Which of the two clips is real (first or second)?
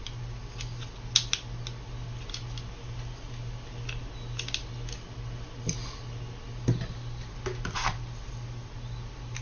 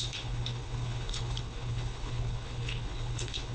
first